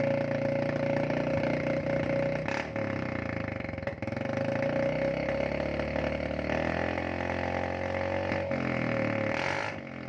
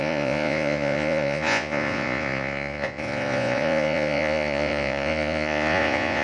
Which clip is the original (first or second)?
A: first